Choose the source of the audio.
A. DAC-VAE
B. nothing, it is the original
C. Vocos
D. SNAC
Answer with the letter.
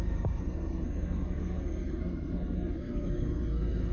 D